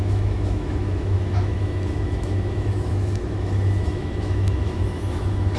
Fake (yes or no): yes